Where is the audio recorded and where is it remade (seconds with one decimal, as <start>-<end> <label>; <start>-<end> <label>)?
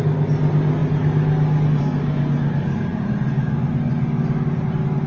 0.0-2.9 recorded; 2.9-3.5 remade; 3.5-5.1 recorded